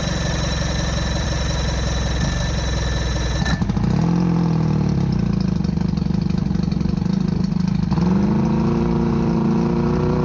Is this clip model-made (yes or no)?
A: no